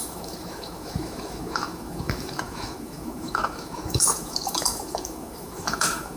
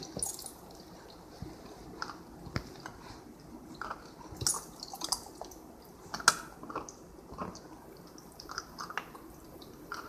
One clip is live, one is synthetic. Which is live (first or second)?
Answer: second